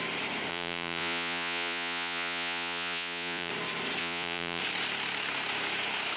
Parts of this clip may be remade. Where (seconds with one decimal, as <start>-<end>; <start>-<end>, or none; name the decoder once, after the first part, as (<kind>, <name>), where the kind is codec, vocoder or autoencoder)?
0.5-3.5 (vocoder, Vocos); 4.0-4.6

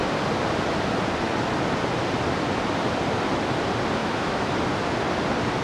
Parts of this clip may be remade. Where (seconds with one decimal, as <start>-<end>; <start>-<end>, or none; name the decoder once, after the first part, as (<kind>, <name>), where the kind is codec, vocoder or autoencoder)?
4.0-4.5 (autoencoder, DAC-VAE)